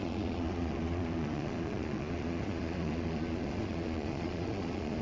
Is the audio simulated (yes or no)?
yes